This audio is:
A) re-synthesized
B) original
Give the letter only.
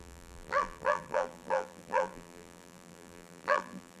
A